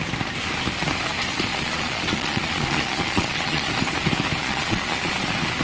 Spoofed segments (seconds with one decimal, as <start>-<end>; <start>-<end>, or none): 1.5-3.7; 4.4-5.1